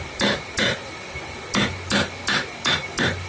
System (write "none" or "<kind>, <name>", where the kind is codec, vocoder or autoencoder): none